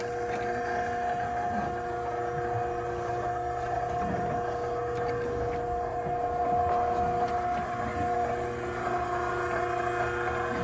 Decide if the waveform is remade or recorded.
recorded